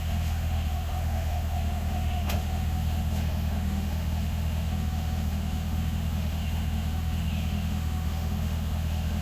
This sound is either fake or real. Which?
fake